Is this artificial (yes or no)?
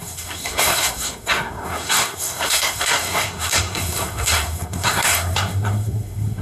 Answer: yes